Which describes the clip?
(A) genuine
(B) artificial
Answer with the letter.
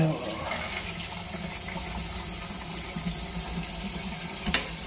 A